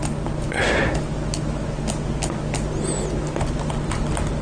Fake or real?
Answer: real